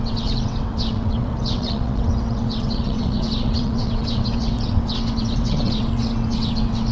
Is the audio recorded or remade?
remade